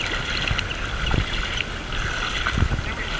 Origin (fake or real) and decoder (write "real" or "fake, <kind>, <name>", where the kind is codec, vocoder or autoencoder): real